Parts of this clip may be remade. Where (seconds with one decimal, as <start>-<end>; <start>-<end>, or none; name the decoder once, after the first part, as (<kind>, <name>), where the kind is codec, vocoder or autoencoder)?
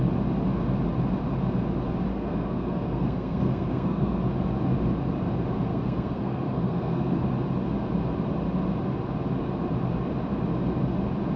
2.1-4.3 (codec, SNAC); 5.7-7.1